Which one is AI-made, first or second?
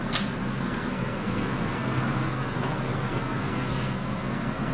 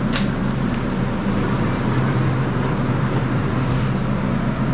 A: first